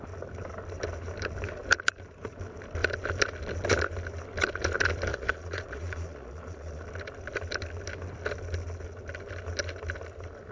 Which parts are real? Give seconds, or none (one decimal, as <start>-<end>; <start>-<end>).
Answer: 0.0-5.1; 6.8-10.5